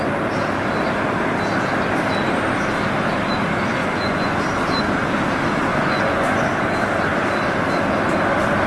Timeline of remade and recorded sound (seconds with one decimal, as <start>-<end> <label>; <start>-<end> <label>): 0.0-3.8 recorded; 3.8-4.4 remade; 4.4-5.7 recorded; 5.7-6.4 remade; 6.4-8.7 recorded